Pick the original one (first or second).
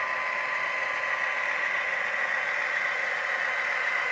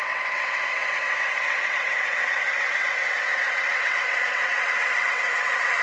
first